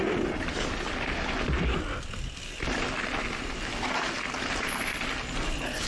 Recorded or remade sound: recorded